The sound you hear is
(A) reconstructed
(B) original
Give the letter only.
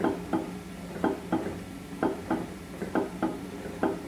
A